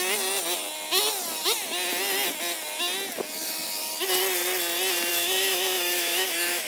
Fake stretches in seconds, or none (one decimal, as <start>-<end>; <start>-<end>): 5.1-6.7

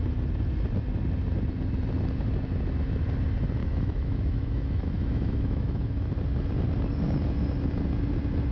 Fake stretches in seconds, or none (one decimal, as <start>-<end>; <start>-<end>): 3.6-6.1

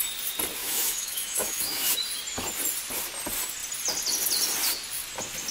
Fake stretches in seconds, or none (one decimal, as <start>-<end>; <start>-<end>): 0.6-2.0

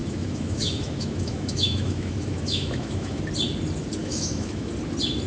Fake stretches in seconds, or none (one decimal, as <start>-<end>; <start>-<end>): 0.0-3.2; 4.0-4.7

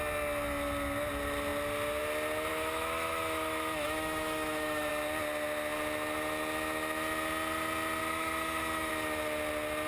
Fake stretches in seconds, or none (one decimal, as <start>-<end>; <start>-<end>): 2.5-4.9; 8.0-8.9

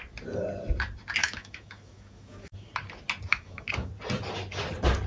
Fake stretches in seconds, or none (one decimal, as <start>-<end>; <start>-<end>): 1.2-2.7; 3.3-3.9